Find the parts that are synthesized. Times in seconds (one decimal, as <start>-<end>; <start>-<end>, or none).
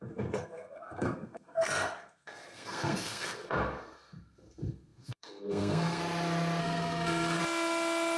0.0-6.0; 6.6-7.4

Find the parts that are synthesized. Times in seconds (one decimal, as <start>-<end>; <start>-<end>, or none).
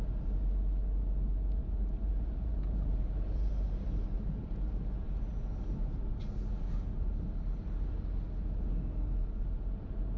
1.6-4.5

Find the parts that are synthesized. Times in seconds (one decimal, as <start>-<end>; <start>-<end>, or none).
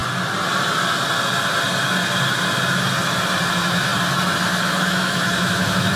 3.5-3.9; 4.5-6.0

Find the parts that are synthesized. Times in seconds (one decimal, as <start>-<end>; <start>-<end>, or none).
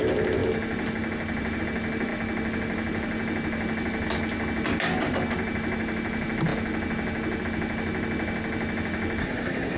9.2-9.8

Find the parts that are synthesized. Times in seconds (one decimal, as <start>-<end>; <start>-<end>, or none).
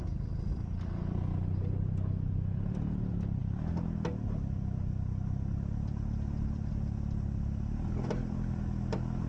none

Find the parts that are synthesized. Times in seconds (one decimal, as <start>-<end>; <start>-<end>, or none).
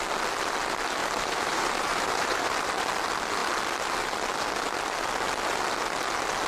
1.0-2.7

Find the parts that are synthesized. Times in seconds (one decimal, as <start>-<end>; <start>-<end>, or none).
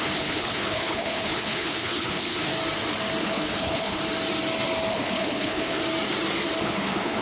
0.0-2.5; 3.2-4.0; 4.9-5.8; 6.6-7.2